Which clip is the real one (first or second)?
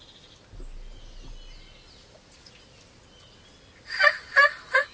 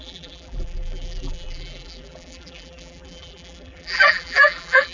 first